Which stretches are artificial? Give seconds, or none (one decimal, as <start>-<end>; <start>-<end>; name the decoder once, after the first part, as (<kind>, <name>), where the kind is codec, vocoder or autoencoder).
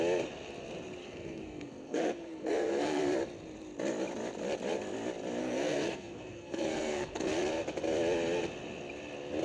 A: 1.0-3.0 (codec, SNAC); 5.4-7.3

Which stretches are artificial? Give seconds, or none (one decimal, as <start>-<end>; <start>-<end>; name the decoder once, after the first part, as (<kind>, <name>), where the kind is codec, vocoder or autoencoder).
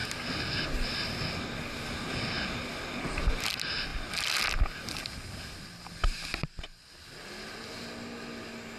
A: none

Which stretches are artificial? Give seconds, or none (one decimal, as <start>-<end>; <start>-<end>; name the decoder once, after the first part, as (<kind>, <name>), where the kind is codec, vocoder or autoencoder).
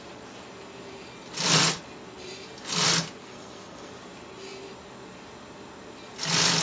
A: 3.2-3.9 (codec, SNAC)